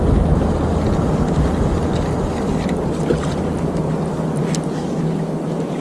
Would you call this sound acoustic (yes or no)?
yes